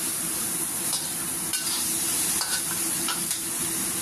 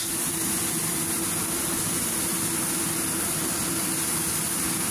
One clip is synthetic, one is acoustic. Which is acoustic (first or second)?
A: second